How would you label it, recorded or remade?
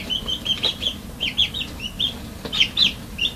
recorded